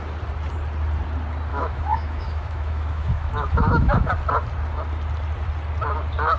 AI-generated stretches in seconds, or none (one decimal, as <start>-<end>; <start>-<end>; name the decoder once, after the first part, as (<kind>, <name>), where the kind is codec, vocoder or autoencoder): 1.5-4.1 (autoencoder, DAC-VAE)